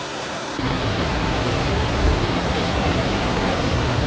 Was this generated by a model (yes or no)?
yes